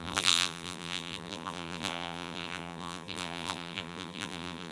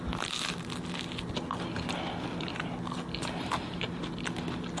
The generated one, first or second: first